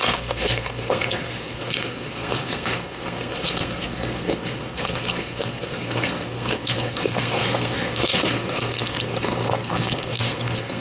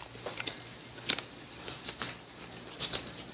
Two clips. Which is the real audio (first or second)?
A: second